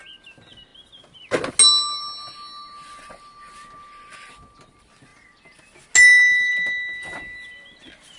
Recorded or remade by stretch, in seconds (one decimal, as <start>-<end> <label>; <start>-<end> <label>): 0.0-8.2 recorded